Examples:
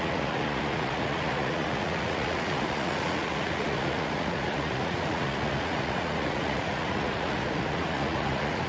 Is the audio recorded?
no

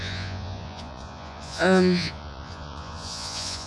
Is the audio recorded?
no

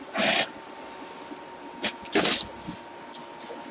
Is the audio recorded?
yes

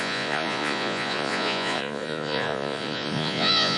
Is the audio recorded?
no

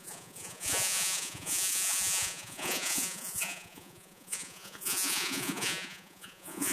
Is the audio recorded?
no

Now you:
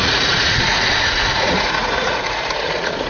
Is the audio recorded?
no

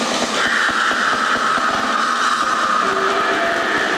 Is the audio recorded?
yes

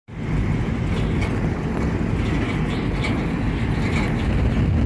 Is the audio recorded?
yes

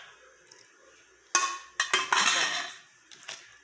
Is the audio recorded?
yes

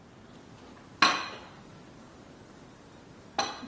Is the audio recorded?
yes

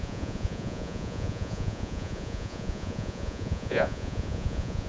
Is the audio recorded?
no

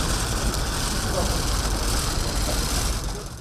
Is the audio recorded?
yes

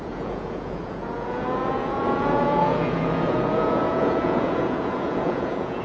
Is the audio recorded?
no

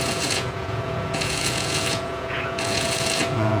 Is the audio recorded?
no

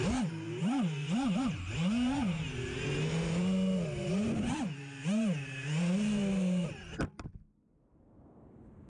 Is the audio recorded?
yes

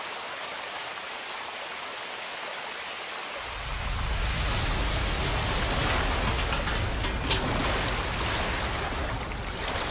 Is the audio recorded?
yes